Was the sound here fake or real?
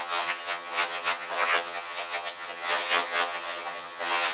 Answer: fake